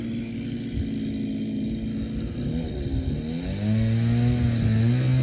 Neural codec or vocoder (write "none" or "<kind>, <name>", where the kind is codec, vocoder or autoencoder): none